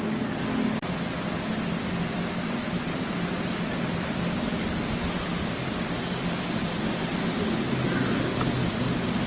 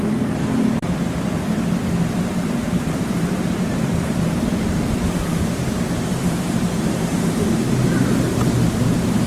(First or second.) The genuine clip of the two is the first